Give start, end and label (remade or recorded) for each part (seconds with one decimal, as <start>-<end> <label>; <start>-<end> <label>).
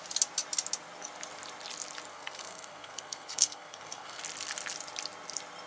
0.0-2.1 recorded; 2.1-4.2 remade; 4.2-5.7 recorded